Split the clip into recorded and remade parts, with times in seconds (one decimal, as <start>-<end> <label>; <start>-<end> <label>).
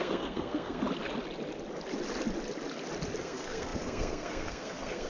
0.0-0.8 remade; 0.8-3.2 recorded; 3.2-5.1 remade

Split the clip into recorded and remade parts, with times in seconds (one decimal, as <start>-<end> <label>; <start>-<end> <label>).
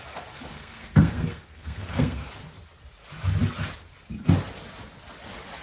0.0-0.5 recorded; 0.5-2.3 remade; 2.3-5.6 recorded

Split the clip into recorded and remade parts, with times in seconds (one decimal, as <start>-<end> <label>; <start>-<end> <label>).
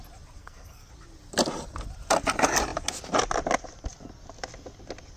0.0-0.4 recorded; 0.4-0.9 remade; 0.9-5.2 recorded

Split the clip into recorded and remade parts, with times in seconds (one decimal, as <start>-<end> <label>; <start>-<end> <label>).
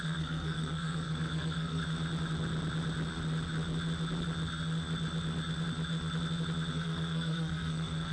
0.0-1.8 remade; 1.8-6.7 recorded; 6.7-8.1 remade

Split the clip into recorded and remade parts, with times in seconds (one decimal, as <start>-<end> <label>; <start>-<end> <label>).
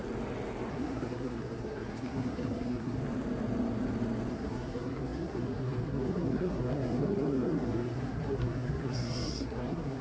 0.0-0.7 recorded; 0.7-3.0 remade; 3.0-4.3 recorded; 4.3-10.0 remade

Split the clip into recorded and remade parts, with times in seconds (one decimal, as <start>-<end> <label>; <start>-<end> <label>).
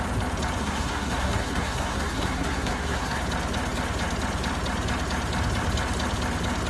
0.0-0.6 recorded; 0.6-3.2 remade; 3.2-6.7 recorded